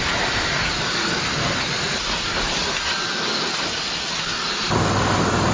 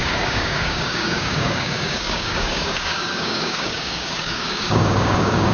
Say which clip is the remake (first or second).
second